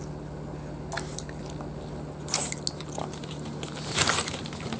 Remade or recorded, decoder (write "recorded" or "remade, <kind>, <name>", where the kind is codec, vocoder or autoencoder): recorded